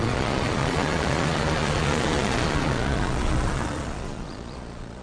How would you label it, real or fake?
fake